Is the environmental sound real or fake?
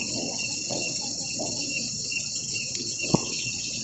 fake